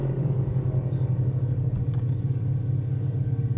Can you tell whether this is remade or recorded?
remade